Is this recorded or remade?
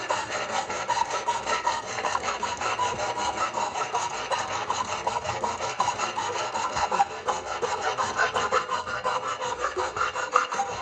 remade